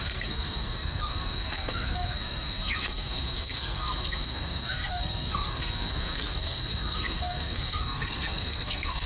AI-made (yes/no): yes